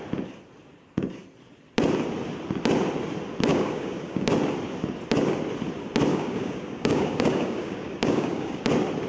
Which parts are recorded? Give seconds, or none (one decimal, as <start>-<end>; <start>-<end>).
0.0-3.5; 4.3-6.1; 8.6-9.1